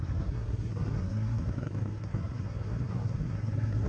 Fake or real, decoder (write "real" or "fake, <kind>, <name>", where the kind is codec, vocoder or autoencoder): fake, codec, SNAC